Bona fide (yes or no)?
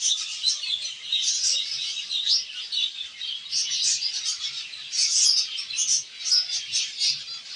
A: yes